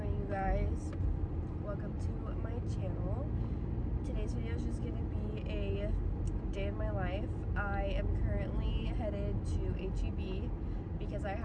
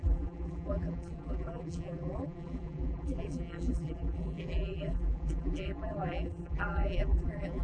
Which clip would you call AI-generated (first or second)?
second